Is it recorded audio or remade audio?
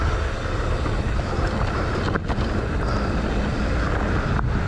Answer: recorded